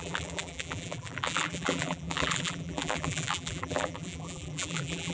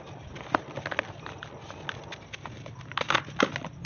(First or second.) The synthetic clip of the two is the first